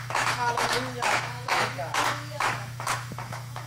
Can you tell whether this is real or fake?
fake